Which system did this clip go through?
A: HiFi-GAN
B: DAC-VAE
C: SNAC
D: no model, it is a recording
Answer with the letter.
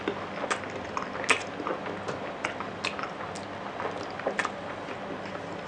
D